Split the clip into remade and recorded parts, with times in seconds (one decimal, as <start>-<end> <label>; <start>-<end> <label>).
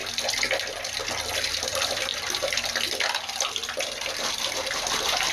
0.0-5.3 recorded